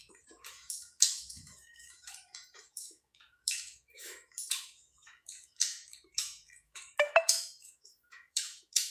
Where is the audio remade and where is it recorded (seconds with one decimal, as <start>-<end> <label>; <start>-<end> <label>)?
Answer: 0.0-8.9 remade